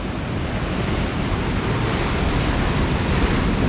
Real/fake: real